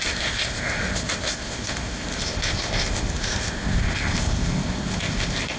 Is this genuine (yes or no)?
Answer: no